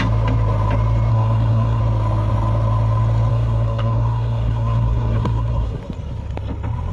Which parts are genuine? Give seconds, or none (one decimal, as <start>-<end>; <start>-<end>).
0.0-1.1; 1.8-3.3; 5.8-6.9